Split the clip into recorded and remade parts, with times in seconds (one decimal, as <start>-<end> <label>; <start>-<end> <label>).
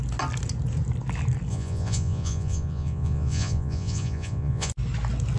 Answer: 0.0-1.5 recorded; 1.5-4.7 remade; 4.7-5.4 recorded